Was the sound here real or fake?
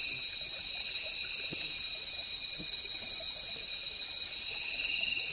real